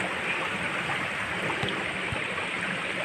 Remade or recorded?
recorded